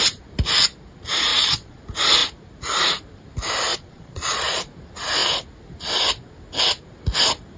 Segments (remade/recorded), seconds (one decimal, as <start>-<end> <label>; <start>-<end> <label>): 0.0-1.3 recorded; 1.3-1.8 remade; 1.8-3.7 recorded; 3.7-4.7 remade; 4.7-7.6 recorded